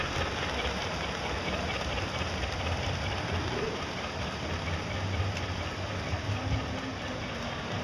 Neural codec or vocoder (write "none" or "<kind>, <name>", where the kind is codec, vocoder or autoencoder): none